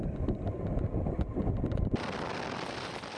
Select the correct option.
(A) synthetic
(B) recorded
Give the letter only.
B